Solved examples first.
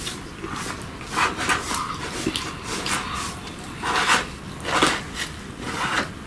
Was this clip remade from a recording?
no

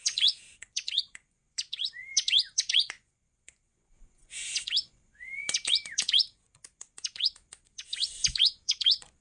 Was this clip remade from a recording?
yes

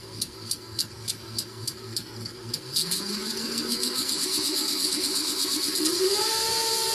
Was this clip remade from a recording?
yes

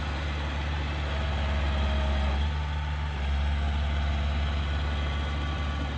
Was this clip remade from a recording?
no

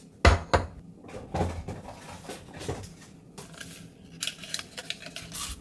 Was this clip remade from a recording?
no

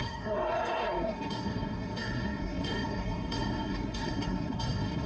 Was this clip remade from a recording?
yes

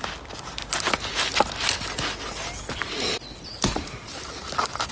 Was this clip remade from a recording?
no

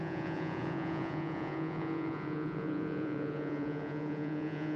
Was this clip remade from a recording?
yes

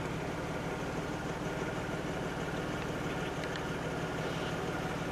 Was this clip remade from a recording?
no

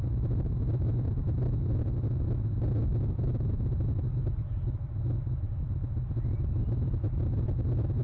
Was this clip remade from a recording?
no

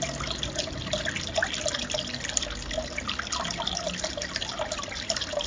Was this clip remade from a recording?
no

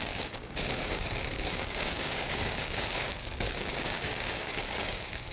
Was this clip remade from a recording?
yes